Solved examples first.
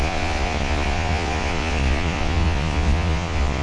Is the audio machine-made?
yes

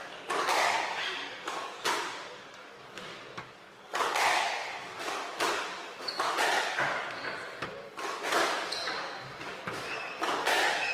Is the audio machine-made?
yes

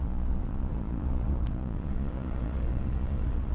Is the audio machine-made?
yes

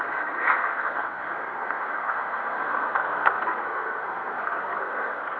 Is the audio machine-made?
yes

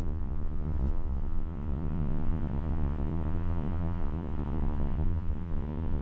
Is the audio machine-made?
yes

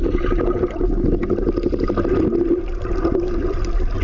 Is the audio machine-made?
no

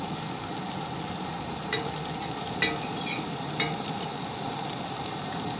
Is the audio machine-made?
no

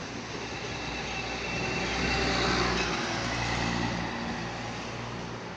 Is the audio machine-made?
no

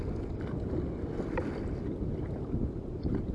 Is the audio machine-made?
no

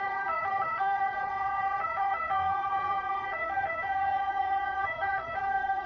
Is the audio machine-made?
yes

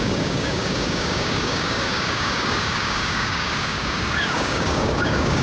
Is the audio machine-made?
yes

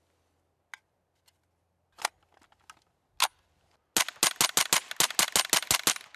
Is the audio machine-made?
no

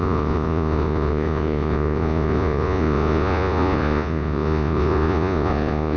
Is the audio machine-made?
yes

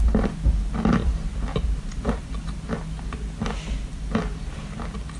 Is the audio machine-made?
no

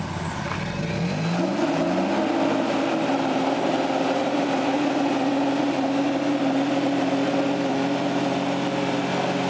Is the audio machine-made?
no